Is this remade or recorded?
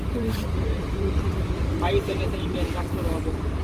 remade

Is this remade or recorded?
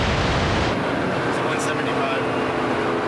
recorded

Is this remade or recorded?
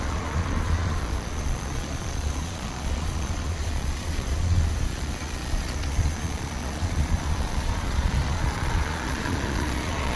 remade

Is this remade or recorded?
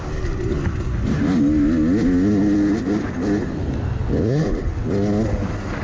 recorded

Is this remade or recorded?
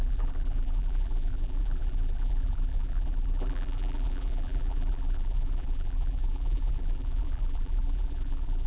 remade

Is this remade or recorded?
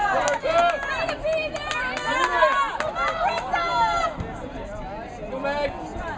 recorded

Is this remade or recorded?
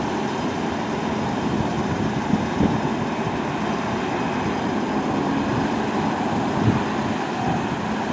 recorded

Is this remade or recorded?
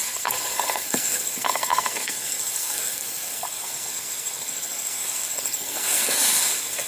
remade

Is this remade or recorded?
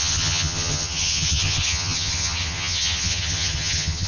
remade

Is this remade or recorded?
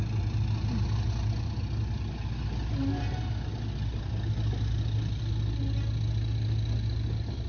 recorded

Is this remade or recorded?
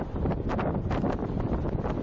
recorded